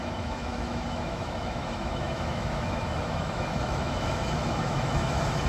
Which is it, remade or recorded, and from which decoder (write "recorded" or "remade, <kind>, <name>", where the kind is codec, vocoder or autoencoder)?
remade, autoencoder, DAC-VAE